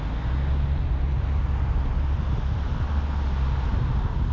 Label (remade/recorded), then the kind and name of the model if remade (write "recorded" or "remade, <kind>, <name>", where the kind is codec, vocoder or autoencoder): recorded